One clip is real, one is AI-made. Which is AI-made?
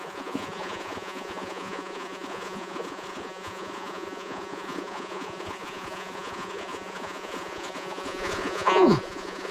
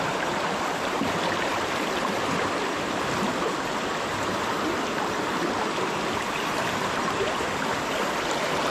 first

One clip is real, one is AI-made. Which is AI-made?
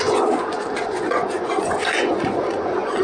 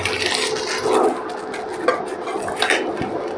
first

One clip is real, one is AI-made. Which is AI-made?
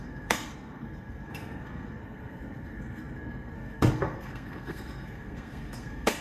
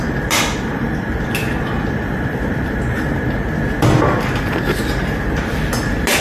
first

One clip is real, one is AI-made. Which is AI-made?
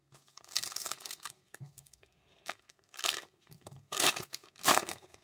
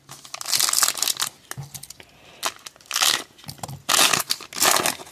first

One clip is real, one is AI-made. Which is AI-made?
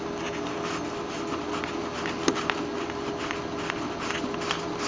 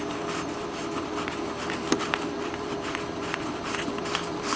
second